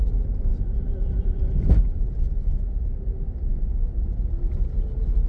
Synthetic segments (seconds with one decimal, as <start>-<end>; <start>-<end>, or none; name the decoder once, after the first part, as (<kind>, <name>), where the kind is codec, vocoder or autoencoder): none